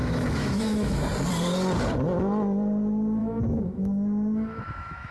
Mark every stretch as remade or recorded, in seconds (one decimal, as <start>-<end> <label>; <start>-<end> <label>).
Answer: 0.0-1.0 remade; 1.0-3.2 recorded; 3.2-5.1 remade